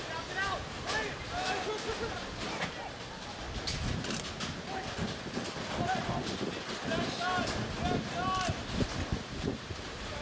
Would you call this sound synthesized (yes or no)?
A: no